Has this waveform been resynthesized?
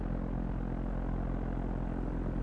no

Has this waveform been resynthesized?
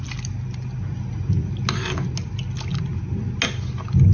no